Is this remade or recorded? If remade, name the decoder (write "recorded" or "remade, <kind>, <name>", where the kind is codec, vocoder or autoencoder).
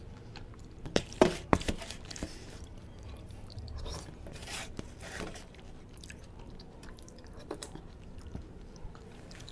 remade, vocoder, BigVGAN v2